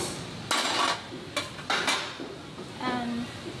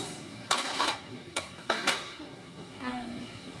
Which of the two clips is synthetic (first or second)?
second